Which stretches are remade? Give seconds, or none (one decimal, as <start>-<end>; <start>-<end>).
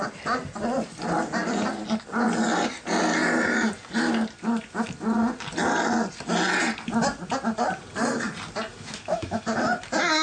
8.7-9.4